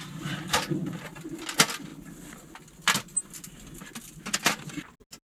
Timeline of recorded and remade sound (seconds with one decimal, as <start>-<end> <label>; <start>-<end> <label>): 0.0-5.2 recorded